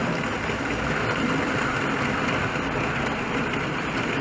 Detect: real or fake real